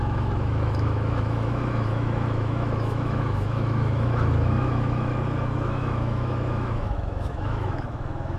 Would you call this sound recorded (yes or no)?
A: no